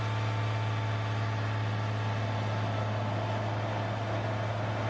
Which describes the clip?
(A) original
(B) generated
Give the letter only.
A